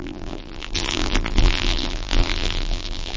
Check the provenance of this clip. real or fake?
fake